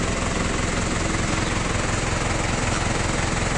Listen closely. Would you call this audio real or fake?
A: real